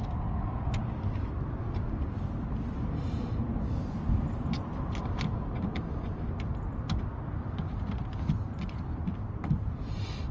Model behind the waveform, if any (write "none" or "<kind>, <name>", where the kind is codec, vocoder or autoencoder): none